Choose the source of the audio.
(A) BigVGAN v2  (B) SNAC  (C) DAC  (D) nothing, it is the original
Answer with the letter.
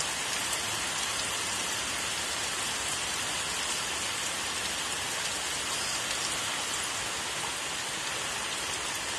D